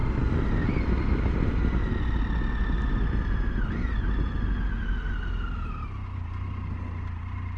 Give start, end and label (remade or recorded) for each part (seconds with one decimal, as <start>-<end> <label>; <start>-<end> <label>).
0.0-7.6 recorded